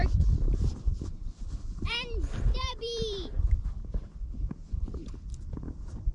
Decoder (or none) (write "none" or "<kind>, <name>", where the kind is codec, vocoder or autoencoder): vocoder, BigVGAN v2